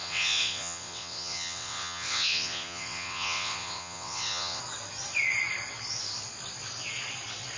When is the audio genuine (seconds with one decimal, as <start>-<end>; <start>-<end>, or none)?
4.6-7.6